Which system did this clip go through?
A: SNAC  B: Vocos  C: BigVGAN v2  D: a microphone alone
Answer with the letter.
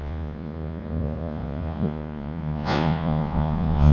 B